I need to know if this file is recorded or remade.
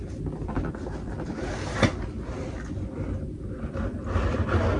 recorded